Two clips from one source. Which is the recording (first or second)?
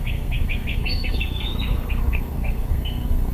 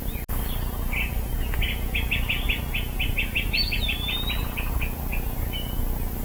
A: second